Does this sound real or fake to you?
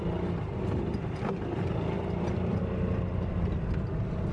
real